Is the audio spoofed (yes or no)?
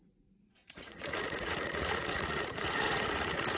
yes